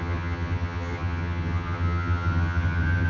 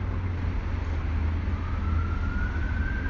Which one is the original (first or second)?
second